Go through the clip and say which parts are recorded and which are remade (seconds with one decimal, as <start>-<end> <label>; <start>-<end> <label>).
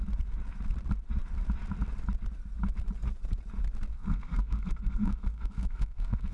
0.0-3.9 recorded; 3.9-6.3 remade